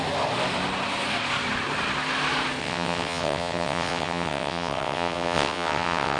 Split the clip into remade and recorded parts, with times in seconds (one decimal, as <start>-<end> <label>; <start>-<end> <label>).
0.0-2.6 recorded; 2.6-6.2 remade